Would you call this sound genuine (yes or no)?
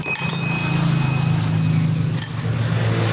yes